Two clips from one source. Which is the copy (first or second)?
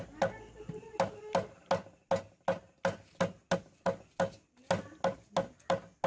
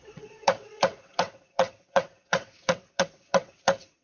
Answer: second